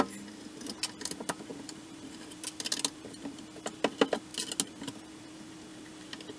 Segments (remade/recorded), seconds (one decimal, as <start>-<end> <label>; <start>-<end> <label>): 0.0-6.4 recorded